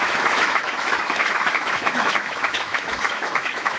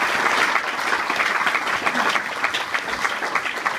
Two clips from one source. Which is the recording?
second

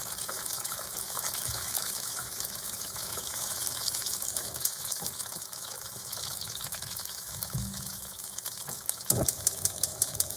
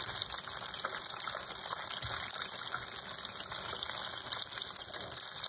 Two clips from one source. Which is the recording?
second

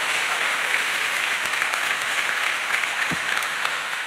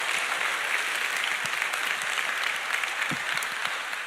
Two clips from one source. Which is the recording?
second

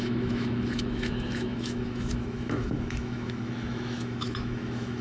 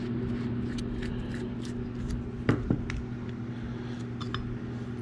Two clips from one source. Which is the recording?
second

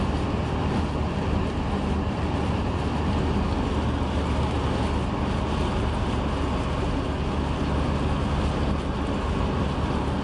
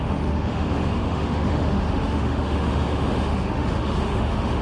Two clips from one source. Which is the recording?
first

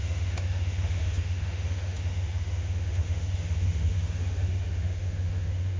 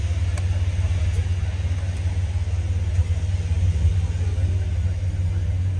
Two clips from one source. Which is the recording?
second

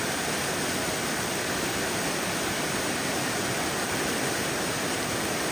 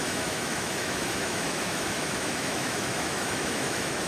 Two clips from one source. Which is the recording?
first